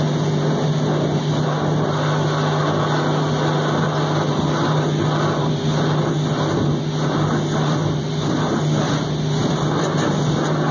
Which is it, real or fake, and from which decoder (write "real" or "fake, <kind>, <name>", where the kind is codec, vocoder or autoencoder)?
real